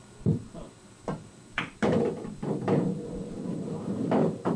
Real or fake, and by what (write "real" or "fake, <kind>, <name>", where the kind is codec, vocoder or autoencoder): fake, vocoder, BigVGAN v2